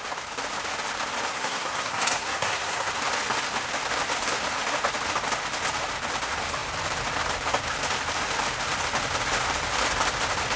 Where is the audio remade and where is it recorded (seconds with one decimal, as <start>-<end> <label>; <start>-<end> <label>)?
0.0-1.3 recorded; 1.3-2.9 remade; 2.9-10.6 recorded